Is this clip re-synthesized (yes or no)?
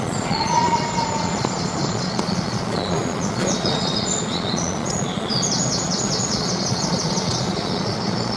yes